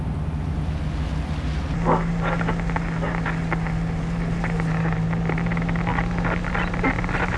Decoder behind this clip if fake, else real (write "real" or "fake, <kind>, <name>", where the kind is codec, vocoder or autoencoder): real